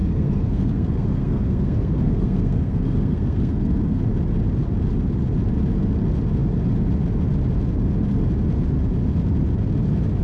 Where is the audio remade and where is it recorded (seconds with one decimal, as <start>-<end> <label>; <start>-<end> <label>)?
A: 0.0-4.0 remade; 4.0-10.2 recorded